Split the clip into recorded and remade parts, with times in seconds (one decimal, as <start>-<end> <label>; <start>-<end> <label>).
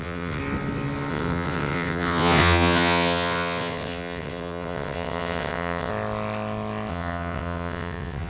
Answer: 0.0-0.4 remade; 0.4-1.1 recorded; 1.1-5.9 remade; 5.9-6.9 recorded; 6.9-8.3 remade